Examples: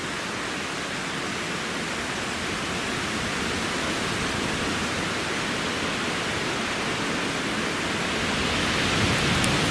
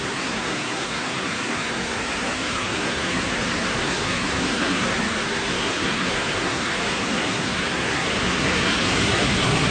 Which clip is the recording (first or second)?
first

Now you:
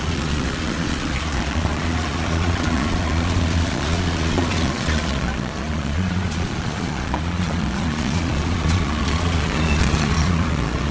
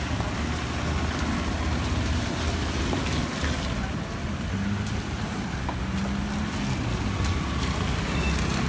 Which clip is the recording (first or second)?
second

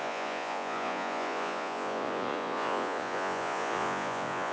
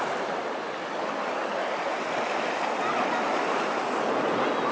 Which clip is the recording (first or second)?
second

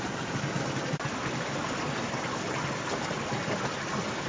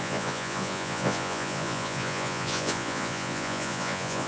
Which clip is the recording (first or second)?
first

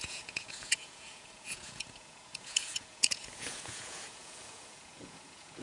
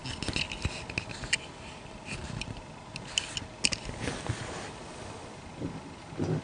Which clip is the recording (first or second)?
second